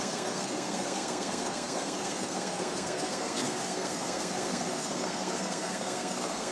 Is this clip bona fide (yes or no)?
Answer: no